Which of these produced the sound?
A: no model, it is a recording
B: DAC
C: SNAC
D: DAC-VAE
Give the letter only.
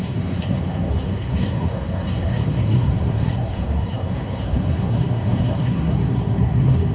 C